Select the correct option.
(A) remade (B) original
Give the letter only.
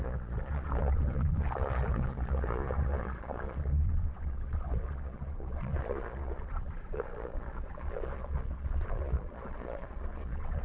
A